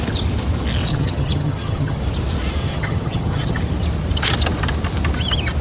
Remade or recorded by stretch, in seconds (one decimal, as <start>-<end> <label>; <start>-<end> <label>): 0.0-0.9 recorded; 0.9-2.0 remade; 2.0-2.6 recorded; 2.6-3.6 remade; 3.6-5.6 recorded